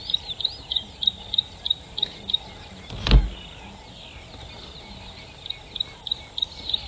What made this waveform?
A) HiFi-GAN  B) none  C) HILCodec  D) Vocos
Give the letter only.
B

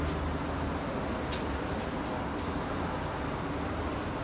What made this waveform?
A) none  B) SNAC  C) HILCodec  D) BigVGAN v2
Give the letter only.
A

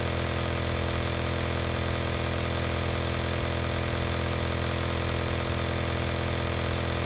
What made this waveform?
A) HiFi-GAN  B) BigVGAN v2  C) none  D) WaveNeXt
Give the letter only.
C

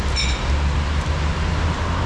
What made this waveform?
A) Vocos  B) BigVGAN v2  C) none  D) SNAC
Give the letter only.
C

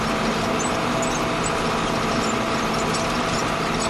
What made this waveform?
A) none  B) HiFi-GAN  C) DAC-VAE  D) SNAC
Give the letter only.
A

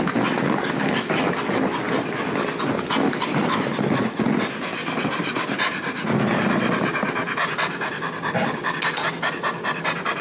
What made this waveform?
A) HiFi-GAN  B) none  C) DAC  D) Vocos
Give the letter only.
B